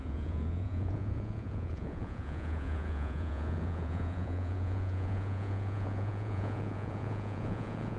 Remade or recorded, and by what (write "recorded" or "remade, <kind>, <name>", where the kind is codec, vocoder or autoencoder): remade, vocoder, Vocos